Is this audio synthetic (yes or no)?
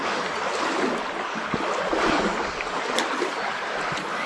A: no